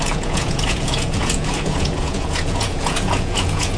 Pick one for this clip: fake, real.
fake